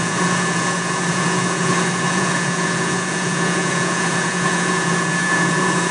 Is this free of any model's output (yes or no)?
no